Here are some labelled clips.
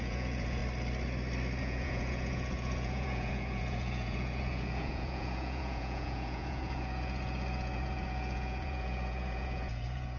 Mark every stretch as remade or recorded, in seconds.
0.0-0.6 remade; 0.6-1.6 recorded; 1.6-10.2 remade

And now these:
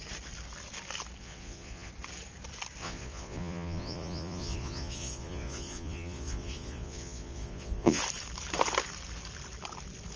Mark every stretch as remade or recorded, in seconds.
0.0-1.2 recorded; 1.2-1.9 remade; 1.9-2.8 recorded; 2.8-8.0 remade; 8.0-10.2 recorded

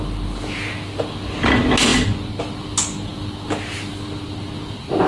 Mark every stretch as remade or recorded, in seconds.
0.0-5.1 recorded